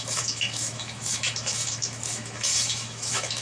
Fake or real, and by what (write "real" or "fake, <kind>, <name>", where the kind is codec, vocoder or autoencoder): fake, autoencoder, DAC-VAE